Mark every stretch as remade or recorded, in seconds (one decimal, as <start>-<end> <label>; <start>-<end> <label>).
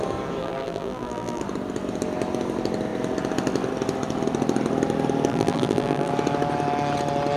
0.0-0.4 recorded; 0.4-1.4 remade; 1.4-5.3 recorded; 5.3-6.1 remade; 6.1-7.4 recorded